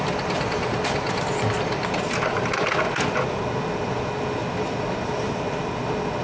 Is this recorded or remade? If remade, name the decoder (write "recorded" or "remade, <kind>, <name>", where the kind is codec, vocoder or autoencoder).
recorded